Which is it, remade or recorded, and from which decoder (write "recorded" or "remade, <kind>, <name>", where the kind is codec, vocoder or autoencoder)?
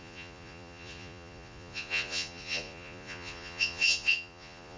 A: remade, vocoder, Vocos